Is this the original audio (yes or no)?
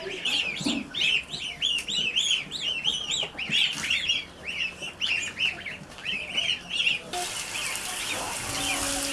yes